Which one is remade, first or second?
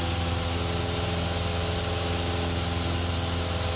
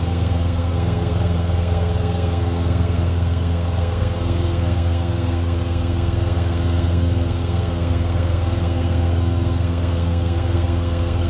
second